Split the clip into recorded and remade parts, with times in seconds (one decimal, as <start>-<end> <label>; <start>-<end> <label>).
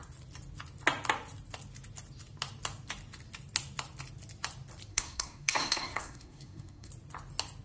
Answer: 0.0-4.9 recorded; 4.9-6.9 remade; 6.9-7.6 recorded